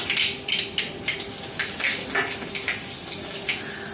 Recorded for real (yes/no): yes